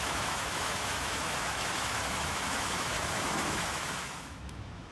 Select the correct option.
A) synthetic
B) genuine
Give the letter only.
A